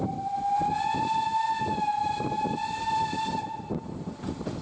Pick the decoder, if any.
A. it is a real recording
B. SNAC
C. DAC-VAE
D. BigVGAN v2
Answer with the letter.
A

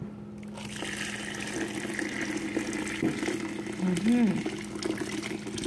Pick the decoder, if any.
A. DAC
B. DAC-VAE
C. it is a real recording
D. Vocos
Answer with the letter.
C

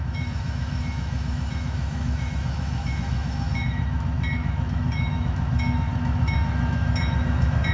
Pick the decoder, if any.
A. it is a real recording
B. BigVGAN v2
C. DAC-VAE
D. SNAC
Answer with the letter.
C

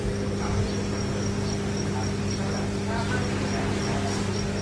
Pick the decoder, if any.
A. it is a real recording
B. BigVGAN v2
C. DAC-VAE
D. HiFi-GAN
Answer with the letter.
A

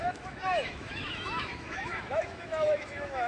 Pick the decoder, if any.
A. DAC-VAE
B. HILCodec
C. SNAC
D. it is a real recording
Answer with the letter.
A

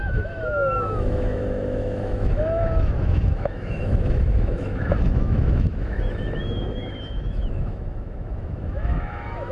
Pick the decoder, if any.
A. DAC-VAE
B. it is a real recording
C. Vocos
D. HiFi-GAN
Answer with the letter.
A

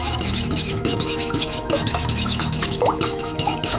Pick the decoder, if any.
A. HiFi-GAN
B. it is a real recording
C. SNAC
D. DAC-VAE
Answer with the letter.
D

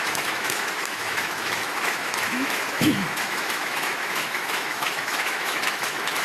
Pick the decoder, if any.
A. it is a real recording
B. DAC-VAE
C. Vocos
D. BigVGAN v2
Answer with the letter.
B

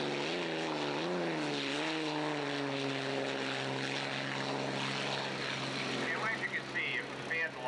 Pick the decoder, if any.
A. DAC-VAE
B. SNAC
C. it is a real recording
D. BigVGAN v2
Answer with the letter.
C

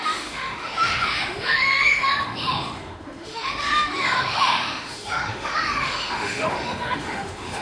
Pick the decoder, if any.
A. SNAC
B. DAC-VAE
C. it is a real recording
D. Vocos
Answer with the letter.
B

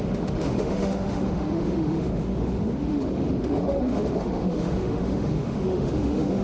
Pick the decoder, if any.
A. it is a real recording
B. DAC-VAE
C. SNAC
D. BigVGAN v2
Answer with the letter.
B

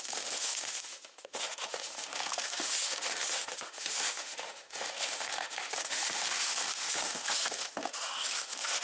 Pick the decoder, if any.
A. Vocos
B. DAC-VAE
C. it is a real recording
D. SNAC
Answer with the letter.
B